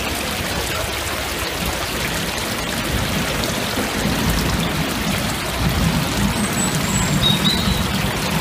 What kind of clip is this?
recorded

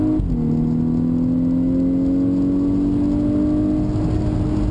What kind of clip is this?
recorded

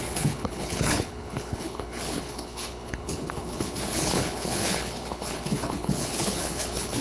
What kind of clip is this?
remade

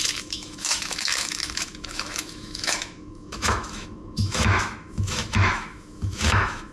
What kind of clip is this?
remade